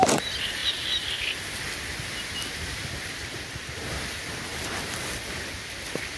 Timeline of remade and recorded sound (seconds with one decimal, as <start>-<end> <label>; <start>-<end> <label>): 0.0-0.6 remade; 0.6-2.9 recorded; 2.9-6.2 remade

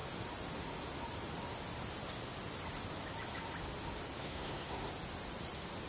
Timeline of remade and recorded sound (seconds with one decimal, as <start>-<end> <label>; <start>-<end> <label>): 0.0-4.2 recorded; 4.2-4.9 remade; 4.9-5.9 recorded

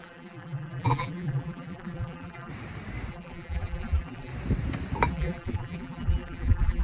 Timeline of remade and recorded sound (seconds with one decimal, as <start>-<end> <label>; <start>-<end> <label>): 0.0-2.5 remade; 2.5-3.1 recorded; 3.1-4.3 remade; 4.3-5.1 recorded; 5.1-6.8 remade

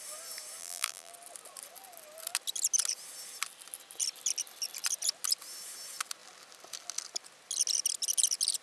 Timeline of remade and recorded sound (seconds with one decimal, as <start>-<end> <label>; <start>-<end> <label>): 0.0-0.6 recorded; 0.6-1.1 remade; 1.1-8.6 recorded

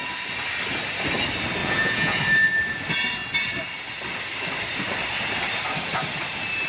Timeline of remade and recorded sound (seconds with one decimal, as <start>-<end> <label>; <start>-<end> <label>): 0.0-1.6 recorded; 1.6-2.2 remade; 2.2-6.7 recorded

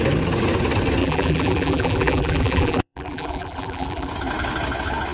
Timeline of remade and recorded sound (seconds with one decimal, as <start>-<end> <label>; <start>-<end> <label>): 0.0-1.0 recorded; 1.0-4.1 remade; 4.1-5.1 recorded